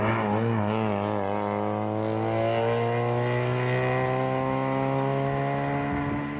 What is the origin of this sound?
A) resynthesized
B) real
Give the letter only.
B